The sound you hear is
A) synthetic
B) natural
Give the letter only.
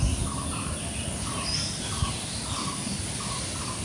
B